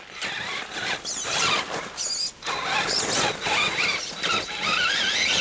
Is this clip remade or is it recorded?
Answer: recorded